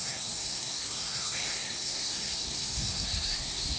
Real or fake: fake